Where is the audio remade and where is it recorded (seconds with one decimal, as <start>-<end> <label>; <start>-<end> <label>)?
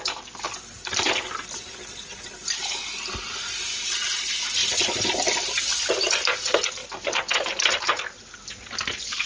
0.0-9.3 recorded